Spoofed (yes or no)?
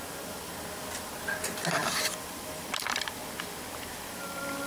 yes